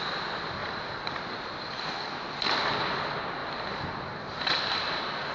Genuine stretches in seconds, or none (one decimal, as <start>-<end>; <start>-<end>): 0.0-5.3